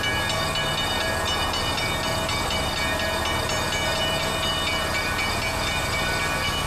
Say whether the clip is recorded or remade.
recorded